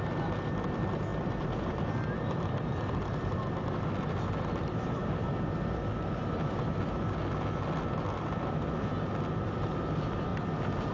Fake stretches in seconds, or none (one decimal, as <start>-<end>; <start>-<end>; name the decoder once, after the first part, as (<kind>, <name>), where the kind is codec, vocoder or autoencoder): none